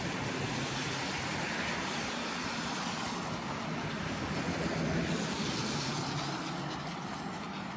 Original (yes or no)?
yes